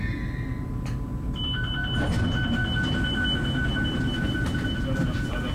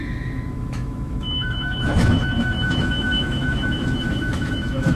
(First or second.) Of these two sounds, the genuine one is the first